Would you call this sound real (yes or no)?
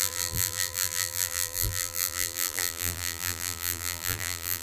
no